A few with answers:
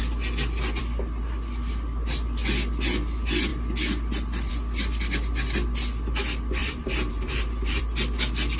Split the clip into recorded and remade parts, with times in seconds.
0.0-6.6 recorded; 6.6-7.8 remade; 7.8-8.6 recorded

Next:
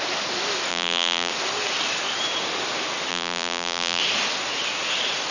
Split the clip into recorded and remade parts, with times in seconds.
0.0-0.7 recorded; 0.7-1.3 remade; 1.3-3.1 recorded; 3.1-4.0 remade; 4.0-5.3 recorded